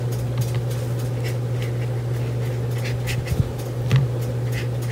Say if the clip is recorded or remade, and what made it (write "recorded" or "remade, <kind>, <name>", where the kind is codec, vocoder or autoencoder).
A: recorded